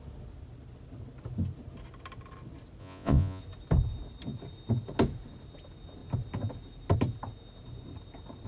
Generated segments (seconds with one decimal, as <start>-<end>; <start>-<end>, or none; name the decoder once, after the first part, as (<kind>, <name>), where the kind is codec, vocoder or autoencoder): 2.8-3.4 (vocoder, Vocos)